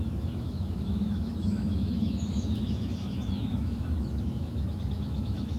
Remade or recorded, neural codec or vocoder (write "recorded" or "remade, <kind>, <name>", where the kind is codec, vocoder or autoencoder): remade, autoencoder, DAC-VAE